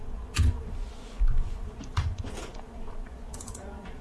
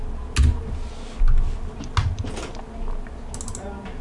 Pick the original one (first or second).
second